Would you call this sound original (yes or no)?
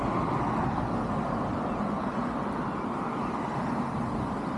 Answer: yes